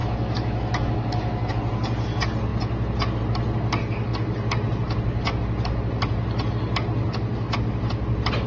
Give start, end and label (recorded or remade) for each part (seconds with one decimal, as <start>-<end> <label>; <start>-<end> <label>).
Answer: 0.0-1.5 remade; 1.5-8.5 recorded